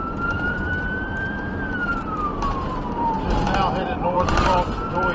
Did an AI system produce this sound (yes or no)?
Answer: yes